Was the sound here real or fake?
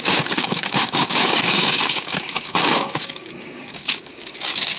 fake